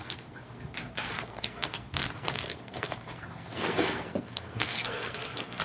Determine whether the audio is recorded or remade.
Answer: remade